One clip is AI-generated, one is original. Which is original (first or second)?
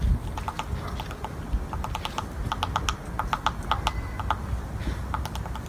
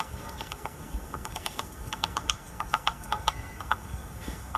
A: first